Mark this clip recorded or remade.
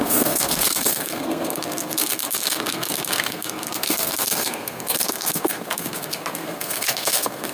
remade